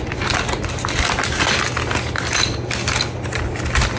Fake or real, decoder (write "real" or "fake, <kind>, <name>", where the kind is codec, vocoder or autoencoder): real